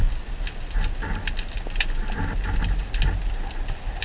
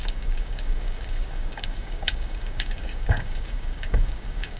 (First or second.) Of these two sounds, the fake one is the second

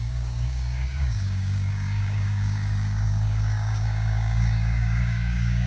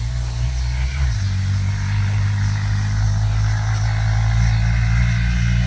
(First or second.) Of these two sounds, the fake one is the first